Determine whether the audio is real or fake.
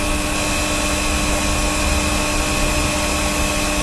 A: real